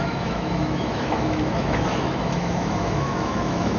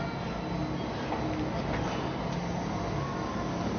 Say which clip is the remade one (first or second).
first